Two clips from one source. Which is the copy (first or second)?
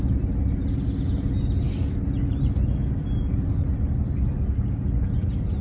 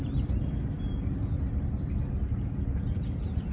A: second